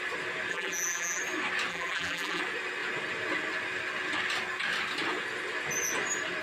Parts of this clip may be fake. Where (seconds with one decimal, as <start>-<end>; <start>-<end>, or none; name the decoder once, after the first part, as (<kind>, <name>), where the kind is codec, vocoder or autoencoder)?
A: 0.5-1.2 (vocoder, BigVGAN v2); 1.7-2.4